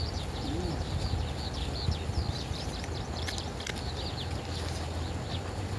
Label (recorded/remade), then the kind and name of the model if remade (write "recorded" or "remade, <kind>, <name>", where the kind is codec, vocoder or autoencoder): recorded